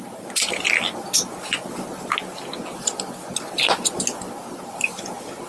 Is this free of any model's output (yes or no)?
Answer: yes